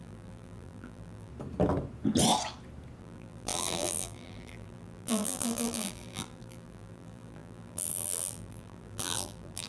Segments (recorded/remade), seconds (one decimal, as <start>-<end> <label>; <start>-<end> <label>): 0.0-1.3 remade; 1.3-3.0 recorded; 3.0-9.7 remade